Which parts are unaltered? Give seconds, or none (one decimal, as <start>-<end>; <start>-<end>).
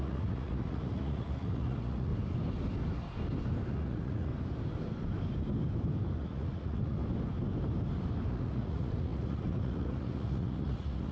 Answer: 2.1-3.7; 4.3-6.2; 7.0-8.3